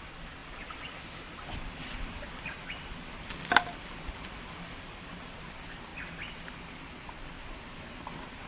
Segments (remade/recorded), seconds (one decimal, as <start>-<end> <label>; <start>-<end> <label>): 0.0-0.4 recorded; 0.4-5.5 remade; 5.5-8.5 recorded